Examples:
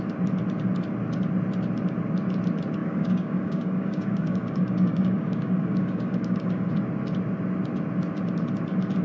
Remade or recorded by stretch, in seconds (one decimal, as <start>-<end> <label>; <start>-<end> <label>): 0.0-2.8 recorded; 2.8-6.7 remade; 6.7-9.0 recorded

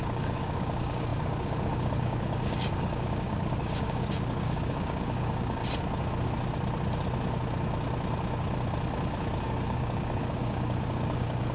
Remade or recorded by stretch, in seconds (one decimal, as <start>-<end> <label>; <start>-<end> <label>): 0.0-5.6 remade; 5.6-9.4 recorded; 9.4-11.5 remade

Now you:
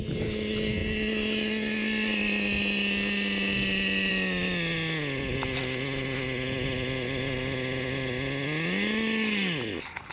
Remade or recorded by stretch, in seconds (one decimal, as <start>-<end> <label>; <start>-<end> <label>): 0.0-10.1 recorded